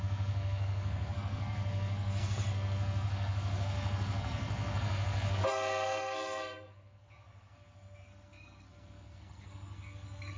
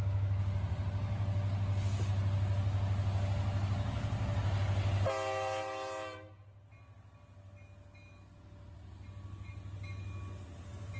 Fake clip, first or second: first